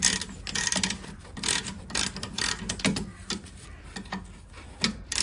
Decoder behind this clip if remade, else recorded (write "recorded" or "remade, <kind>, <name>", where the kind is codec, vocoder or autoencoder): recorded